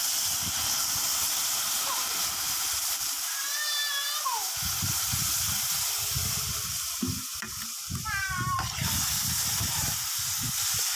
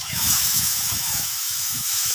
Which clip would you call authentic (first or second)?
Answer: first